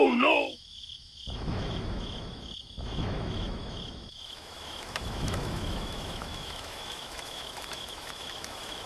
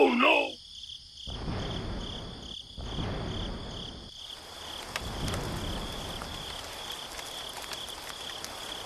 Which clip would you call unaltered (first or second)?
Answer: second